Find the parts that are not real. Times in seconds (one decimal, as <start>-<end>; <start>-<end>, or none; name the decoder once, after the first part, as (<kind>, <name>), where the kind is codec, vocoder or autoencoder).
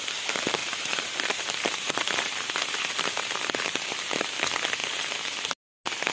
0.6-4.3 (vocoder, BigVGAN v2)